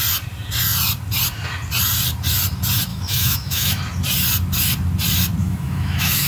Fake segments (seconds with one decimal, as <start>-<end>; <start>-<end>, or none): 2.9-3.8; 5.4-6.3